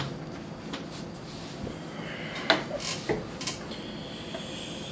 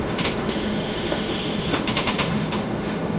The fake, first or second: second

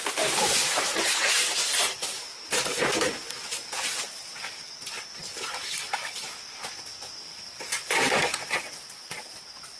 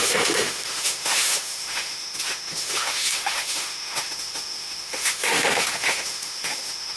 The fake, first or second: second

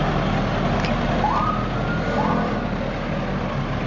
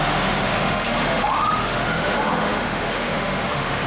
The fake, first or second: second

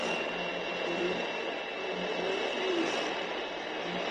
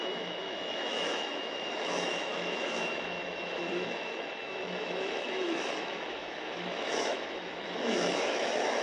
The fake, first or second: second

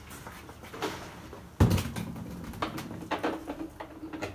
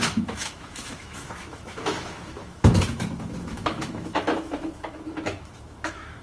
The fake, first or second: second